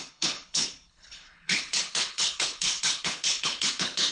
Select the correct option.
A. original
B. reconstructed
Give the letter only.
B